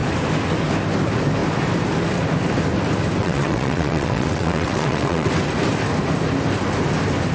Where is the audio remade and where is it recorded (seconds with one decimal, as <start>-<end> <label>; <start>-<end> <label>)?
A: 0.0-3.2 recorded; 3.2-5.3 remade; 5.3-7.3 recorded

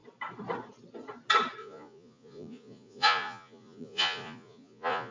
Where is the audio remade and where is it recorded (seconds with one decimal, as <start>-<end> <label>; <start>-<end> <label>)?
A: 0.0-1.6 recorded; 1.6-5.1 remade

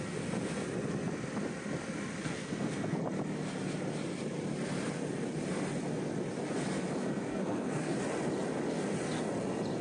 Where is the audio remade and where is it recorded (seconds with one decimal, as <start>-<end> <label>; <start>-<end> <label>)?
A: 0.0-2.2 recorded; 2.2-3.0 remade; 3.0-7.3 recorded; 7.3-8.0 remade; 8.0-9.8 recorded